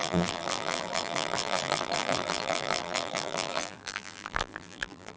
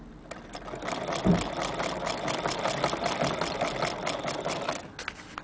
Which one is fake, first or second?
first